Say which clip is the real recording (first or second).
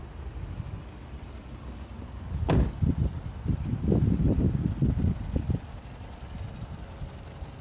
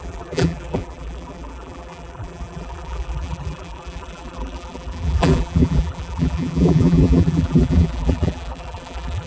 first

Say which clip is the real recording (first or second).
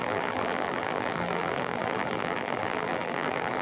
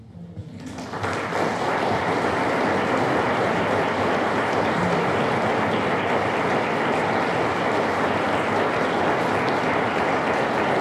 second